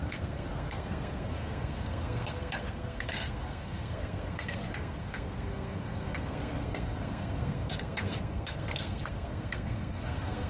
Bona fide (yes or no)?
no